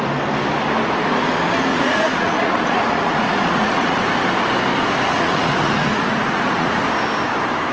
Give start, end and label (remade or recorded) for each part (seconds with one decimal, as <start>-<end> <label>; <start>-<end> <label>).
0.0-1.7 recorded; 1.7-4.1 remade; 4.1-4.7 recorded; 4.7-6.9 remade; 6.9-7.7 recorded